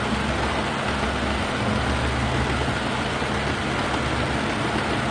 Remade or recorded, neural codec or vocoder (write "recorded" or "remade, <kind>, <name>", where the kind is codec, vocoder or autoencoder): recorded